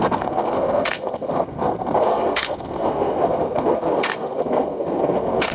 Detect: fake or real fake